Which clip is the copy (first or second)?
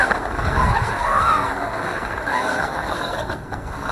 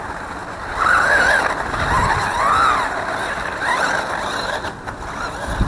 first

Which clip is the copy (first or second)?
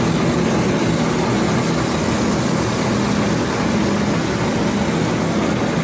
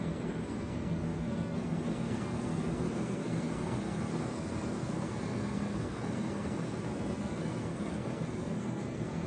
second